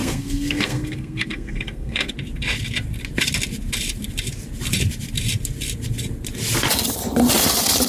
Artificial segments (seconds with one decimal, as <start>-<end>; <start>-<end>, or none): 0.0-2.1